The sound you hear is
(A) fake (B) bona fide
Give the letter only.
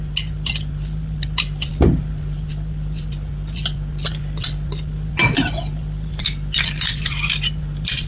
B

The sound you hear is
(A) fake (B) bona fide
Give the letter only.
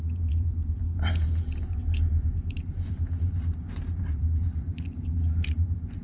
A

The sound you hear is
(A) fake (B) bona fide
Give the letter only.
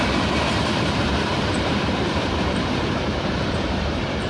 A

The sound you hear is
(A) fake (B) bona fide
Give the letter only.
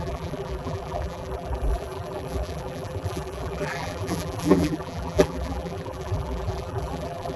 A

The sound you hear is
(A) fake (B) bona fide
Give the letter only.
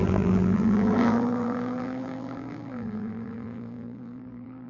A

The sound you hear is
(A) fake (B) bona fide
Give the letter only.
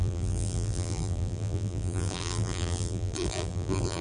A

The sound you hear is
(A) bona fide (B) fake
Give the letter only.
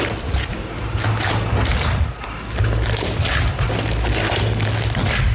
A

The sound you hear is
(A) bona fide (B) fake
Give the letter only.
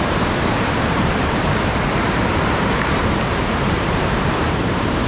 B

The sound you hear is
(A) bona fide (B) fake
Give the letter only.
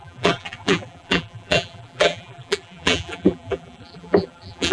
B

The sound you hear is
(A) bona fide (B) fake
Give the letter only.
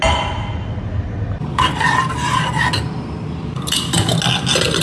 A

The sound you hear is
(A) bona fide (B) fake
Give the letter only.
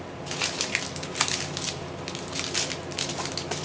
A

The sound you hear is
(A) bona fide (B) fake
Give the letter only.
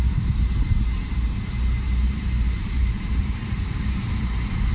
B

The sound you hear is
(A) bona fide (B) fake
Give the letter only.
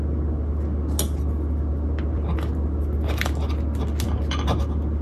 A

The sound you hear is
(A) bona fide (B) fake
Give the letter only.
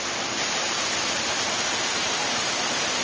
B